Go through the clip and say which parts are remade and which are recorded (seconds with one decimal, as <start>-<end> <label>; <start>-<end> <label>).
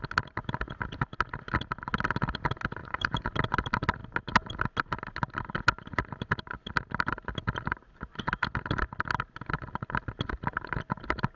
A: 0.0-2.8 recorded; 2.8-3.3 remade; 3.3-11.4 recorded